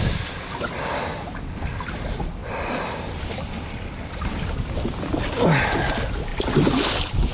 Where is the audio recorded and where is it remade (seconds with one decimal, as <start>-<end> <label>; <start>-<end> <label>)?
0.0-7.3 recorded